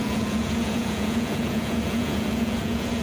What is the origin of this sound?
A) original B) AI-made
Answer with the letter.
B